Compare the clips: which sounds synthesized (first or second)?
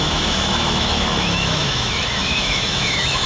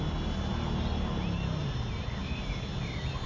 first